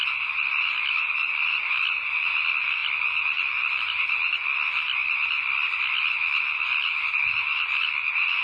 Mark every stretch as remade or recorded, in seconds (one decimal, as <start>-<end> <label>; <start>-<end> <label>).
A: 0.0-8.4 recorded